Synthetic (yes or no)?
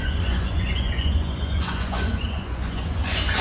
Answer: yes